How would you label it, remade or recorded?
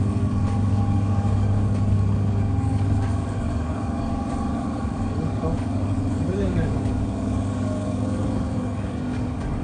remade